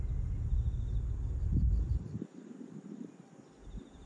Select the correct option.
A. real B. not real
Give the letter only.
A